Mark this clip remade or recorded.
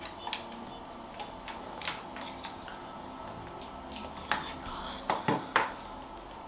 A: recorded